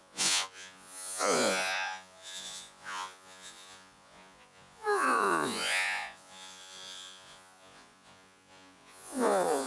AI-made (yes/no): yes